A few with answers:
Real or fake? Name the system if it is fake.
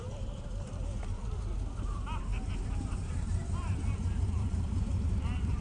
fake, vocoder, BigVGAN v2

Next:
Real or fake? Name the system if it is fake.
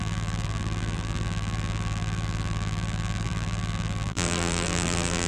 fake, vocoder, BigVGAN v2